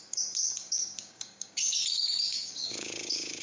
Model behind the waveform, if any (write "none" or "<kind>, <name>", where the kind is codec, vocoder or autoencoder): codec, DAC